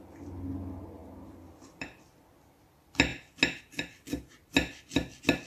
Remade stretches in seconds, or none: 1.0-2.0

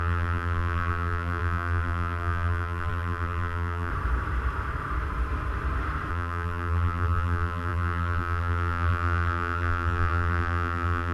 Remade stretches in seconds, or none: 0.0-3.9; 6.1-11.1

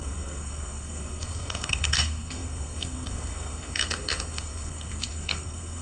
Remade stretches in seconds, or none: 0.0-5.8

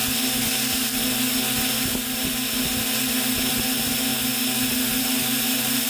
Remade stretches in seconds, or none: 3.5-4.1; 5.0-5.9

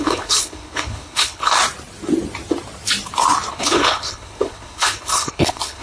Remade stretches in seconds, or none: 0.0-1.6; 3.5-5.8

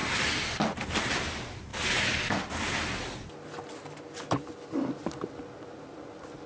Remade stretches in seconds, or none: none

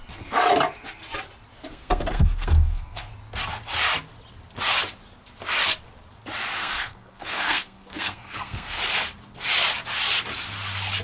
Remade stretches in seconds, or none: 1.7-3.1; 6.6-8.8